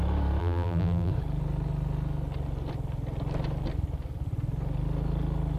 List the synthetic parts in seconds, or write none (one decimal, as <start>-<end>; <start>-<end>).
0.4-1.1